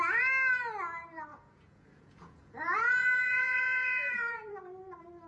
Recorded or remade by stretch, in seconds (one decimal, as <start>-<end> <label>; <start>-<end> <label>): 0.0-1.3 recorded; 1.3-4.5 remade; 4.5-5.3 recorded